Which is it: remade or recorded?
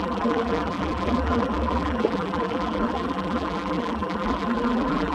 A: remade